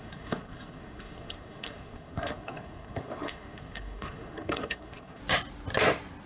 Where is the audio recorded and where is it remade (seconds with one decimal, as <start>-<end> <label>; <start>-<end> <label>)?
0.0-5.2 remade; 5.2-6.3 recorded